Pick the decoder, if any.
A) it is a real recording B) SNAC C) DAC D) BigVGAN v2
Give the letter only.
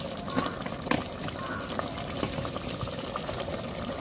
A